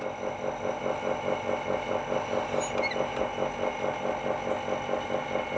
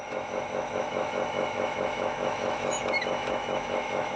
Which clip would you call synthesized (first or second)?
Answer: second